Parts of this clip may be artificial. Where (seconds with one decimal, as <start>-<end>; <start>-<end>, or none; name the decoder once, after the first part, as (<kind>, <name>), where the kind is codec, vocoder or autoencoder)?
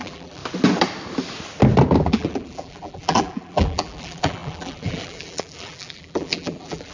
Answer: 0.0-0.4 (vocoder, BigVGAN v2); 2.0-6.9